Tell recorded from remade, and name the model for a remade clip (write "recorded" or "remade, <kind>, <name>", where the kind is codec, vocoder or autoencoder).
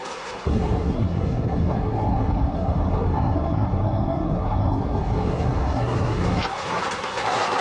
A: remade, codec, SNAC